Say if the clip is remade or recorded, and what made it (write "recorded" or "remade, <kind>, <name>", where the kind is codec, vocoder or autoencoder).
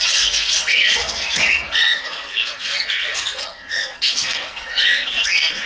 remade, codec, SNAC